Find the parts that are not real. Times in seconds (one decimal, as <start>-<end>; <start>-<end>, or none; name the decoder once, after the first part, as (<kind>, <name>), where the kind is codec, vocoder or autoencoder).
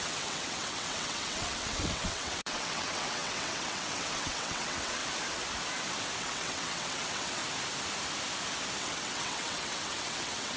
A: 0.0-5.0 (vocoder, WaveNeXt); 6.2-7.4; 8.8-10.6